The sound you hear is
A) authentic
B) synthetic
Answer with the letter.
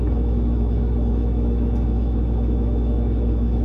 B